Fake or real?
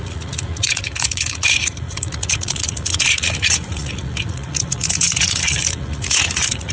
fake